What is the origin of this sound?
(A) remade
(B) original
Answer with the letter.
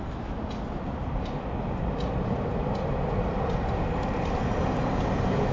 B